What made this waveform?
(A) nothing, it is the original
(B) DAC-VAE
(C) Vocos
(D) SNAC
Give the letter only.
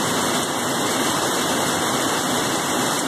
A